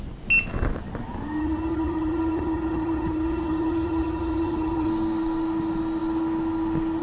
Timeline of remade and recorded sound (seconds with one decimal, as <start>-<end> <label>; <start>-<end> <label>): 0.0-1.4 recorded; 1.4-4.9 remade; 4.9-7.0 recorded